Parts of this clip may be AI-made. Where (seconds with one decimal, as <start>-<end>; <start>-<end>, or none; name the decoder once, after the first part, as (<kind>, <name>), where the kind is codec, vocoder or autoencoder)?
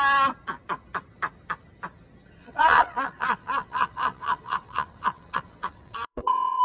2.4-6.6 (vocoder, WaveNeXt)